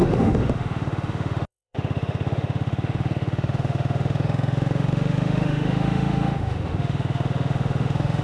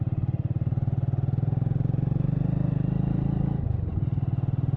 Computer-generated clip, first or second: first